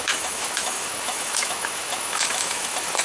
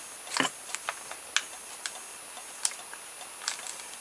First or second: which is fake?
first